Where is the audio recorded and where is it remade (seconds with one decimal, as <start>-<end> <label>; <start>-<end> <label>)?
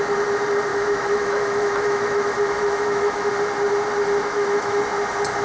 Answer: 0.0-0.7 recorded; 0.7-3.3 remade; 3.3-4.2 recorded; 4.2-4.8 remade; 4.8-5.4 recorded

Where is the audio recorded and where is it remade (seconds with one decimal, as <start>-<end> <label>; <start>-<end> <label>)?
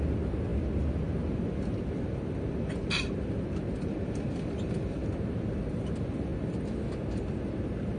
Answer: 0.0-8.0 recorded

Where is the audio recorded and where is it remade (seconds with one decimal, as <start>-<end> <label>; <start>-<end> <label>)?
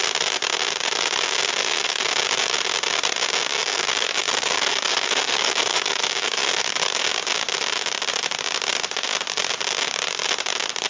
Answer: 0.0-1.6 recorded; 1.6-2.1 remade; 2.1-3.5 recorded; 3.5-7.0 remade; 7.0-10.9 recorded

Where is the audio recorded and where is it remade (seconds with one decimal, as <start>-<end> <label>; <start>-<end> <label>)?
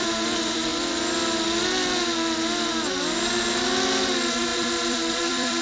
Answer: 0.0-0.7 remade; 0.7-4.0 recorded; 4.0-5.6 remade